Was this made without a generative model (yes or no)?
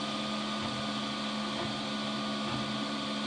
yes